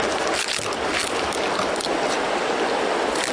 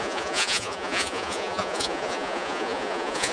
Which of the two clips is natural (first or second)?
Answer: first